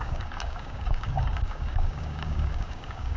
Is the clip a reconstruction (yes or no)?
yes